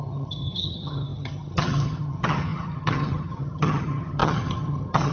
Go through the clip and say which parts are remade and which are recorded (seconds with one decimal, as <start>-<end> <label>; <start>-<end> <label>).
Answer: 0.0-5.1 remade